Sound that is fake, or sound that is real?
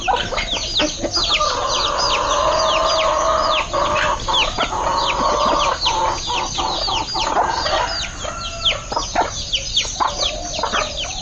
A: real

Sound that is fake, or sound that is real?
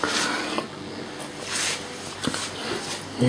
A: real